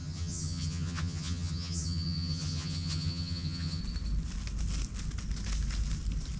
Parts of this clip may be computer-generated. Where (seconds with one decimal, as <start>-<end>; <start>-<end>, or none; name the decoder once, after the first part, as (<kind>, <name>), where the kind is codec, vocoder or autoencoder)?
0.0-3.8 (vocoder, HiFi-GAN)